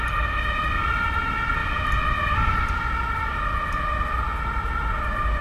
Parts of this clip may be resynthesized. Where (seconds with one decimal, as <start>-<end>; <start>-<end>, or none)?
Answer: none